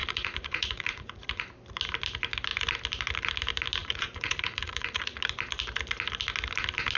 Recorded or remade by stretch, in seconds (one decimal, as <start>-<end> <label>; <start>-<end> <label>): 0.0-1.4 remade; 1.4-3.8 recorded; 3.8-5.2 remade; 5.2-7.0 recorded